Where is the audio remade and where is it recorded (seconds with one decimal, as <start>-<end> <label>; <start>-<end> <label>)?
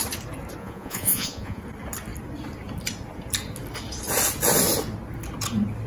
0.0-0.6 recorded; 0.6-1.6 remade; 1.6-5.9 recorded